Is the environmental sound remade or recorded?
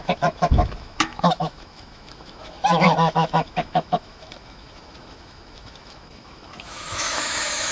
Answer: remade